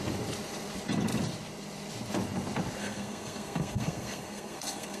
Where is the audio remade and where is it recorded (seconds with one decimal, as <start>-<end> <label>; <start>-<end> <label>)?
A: 0.0-2.8 recorded; 2.8-5.0 remade